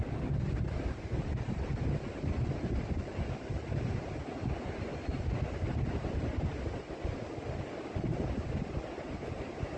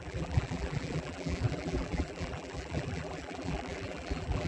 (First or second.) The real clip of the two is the first